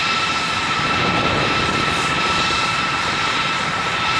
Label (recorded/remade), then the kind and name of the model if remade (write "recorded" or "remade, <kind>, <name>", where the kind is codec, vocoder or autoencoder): remade, vocoder, BigVGAN v2